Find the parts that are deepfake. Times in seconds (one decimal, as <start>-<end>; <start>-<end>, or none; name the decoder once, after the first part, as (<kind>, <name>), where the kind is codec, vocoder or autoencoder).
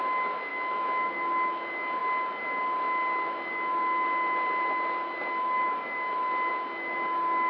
0.5-1.1 (autoencoder, DAC-VAE)